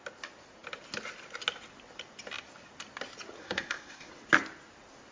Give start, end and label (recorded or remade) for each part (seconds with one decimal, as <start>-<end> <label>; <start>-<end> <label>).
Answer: 0.0-3.4 recorded; 3.4-4.1 remade; 4.1-5.1 recorded